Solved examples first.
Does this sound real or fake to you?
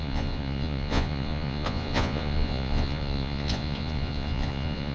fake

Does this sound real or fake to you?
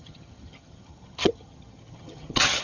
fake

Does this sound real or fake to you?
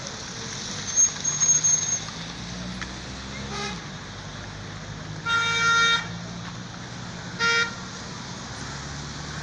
real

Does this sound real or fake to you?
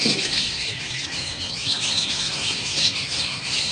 fake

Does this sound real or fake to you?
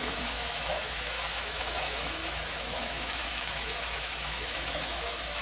fake